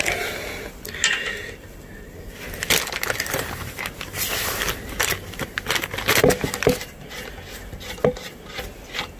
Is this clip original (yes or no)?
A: yes